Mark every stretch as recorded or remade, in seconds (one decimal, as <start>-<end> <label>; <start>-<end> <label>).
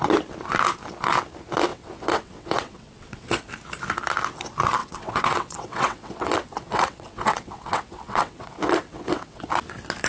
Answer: 0.0-1.7 recorded; 1.7-3.5 remade; 3.5-4.8 recorded; 4.8-9.5 remade; 9.5-10.1 recorded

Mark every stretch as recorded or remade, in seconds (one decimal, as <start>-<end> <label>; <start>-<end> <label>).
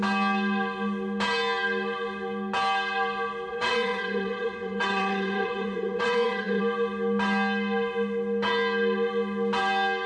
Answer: 0.0-3.5 recorded; 3.5-6.6 remade; 6.6-10.1 recorded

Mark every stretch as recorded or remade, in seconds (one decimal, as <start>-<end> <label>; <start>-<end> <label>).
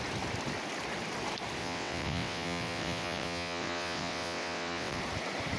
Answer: 0.0-1.6 recorded; 1.6-5.0 remade; 5.0-5.6 recorded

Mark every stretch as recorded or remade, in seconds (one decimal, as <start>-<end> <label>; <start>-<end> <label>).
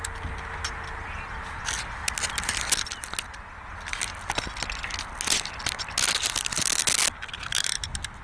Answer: 0.0-8.2 recorded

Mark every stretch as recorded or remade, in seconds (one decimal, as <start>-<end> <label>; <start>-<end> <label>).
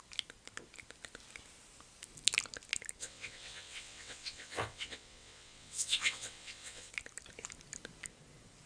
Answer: 0.0-3.0 recorded; 3.0-6.9 remade; 6.9-8.7 recorded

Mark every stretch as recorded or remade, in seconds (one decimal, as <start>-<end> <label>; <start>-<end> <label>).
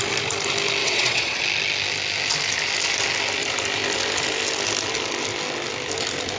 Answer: 0.0-0.8 recorded; 0.8-1.4 remade; 1.4-6.4 recorded